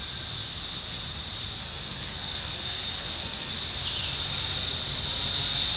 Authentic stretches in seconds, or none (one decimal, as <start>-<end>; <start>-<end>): 0.0-1.6; 3.5-5.8